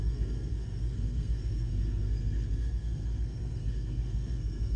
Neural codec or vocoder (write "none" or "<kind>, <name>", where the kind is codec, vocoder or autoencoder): codec, SNAC